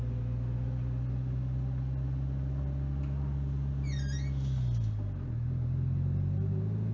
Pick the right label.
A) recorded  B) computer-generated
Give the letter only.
A